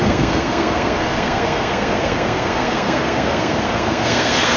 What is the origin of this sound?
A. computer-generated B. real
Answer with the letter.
A